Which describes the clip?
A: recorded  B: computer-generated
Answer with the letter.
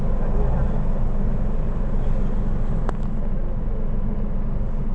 A